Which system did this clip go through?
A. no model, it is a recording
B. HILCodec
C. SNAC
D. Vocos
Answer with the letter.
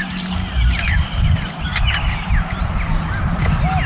A